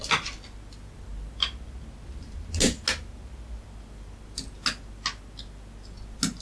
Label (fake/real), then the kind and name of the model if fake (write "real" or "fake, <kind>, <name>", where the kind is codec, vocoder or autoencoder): real